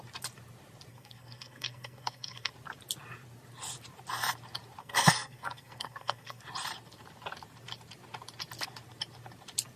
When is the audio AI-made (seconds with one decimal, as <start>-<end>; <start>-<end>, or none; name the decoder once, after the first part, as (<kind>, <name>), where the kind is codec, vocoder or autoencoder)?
0.9-2.5 (codec, SNAC); 4.8-6.4